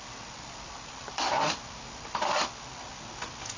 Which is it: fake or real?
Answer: real